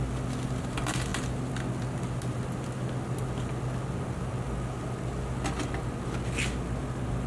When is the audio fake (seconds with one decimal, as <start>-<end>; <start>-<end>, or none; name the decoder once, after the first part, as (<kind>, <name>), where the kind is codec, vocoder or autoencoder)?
none